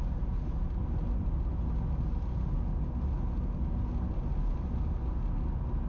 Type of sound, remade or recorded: recorded